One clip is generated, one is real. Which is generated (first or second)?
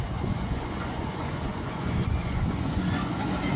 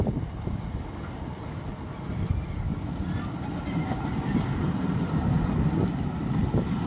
first